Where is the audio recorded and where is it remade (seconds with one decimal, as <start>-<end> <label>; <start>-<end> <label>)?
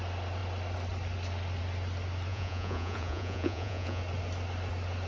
0.0-2.3 recorded; 2.3-4.0 remade; 4.0-5.1 recorded